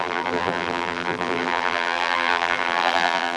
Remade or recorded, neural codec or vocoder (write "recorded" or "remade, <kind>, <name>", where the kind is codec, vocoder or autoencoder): remade, vocoder, BigVGAN v2